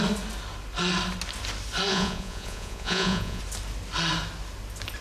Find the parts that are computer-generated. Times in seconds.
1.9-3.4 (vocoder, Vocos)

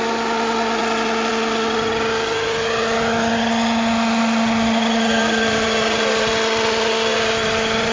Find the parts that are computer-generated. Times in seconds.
5.1-6.3 (vocoder, BigVGAN v2); 7.1-7.9